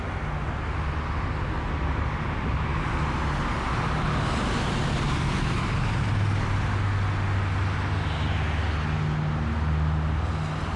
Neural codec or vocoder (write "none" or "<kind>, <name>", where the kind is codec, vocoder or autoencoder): none